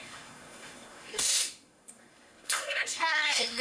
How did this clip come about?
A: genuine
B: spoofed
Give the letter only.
B